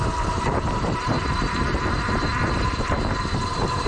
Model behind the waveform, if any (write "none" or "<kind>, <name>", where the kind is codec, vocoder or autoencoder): vocoder, BigVGAN v2